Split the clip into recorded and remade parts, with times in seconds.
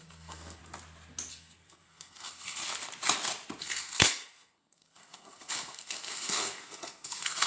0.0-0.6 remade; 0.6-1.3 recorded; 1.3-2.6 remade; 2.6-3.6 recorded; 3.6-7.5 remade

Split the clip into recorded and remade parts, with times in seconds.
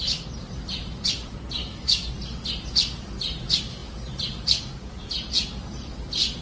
0.0-1.6 recorded; 1.6-2.1 remade; 2.1-6.4 recorded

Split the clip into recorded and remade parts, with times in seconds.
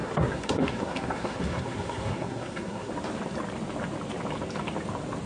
0.0-2.9 remade; 2.9-5.3 recorded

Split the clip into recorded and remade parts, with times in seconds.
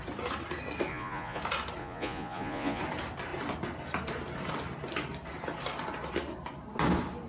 0.0-0.9 recorded; 0.9-1.4 remade; 1.4-1.8 recorded; 1.8-2.8 remade; 2.8-7.3 recorded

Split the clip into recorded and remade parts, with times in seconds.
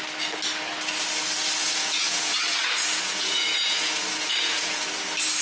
0.0-1.6 recorded; 1.6-4.8 remade; 4.8-5.4 recorded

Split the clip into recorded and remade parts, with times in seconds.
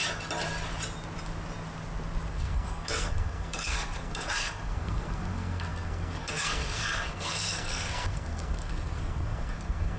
0.0-2.3 recorded; 2.3-10.0 remade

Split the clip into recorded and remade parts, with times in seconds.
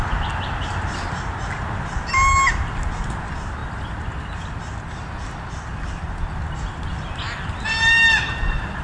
0.0-8.8 recorded